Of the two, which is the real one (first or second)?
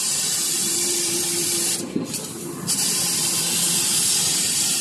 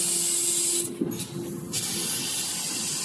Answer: second